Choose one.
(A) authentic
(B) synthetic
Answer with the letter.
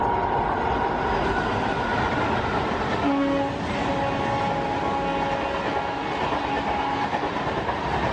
A